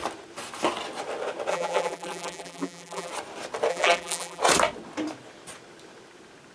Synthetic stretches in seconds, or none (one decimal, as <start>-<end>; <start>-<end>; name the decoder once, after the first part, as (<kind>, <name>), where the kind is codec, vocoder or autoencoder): 1.5-3.1 (vocoder, BigVGAN v2); 3.7-4.4